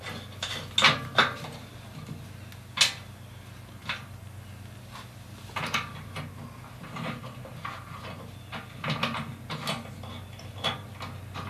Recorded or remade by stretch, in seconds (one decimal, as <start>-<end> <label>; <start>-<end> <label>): 0.0-3.8 recorded; 3.8-6.2 remade; 6.2-11.5 recorded